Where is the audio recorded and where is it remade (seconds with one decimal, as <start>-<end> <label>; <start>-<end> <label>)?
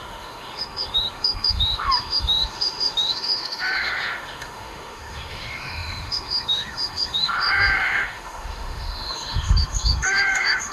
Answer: 0.0-10.7 remade